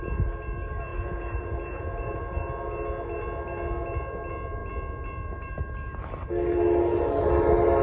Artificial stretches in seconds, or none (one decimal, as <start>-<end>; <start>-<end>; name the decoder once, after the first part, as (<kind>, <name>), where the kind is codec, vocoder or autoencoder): 0.9-2.2 (vocoder, Vocos)